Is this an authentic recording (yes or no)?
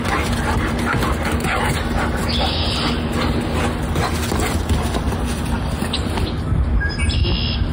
yes